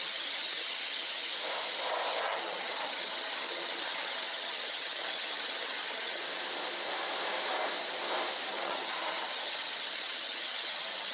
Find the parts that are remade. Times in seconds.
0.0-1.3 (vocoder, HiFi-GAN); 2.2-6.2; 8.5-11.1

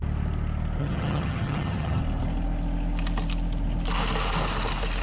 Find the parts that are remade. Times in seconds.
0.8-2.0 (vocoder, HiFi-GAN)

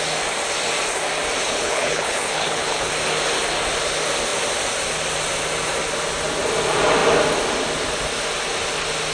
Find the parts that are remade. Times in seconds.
1.4-2.9 (codec, HILCodec)

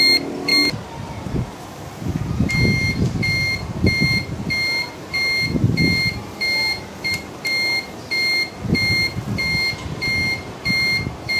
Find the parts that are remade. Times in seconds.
none

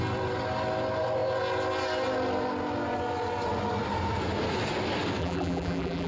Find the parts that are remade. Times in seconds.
5.2-6.1 (vocoder, BigVGAN v2)

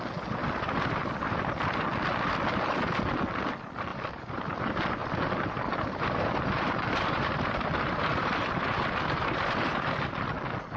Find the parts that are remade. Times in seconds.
0.4-1.5 (vocoder, BigVGAN v2); 3.9-4.5; 5.0-10.0

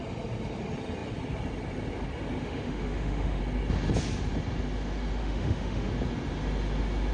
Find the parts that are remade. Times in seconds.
2.4-3.4 (autoencoder, DAC-VAE); 5.2-5.9